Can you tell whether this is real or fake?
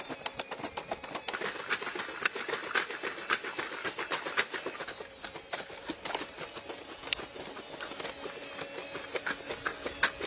real